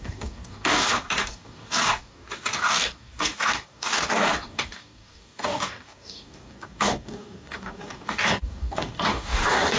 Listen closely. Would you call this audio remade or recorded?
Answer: remade